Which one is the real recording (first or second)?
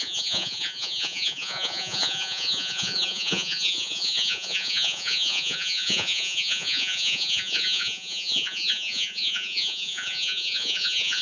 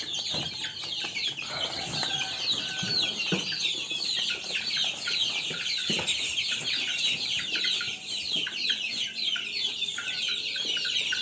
second